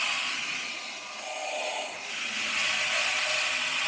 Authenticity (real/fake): real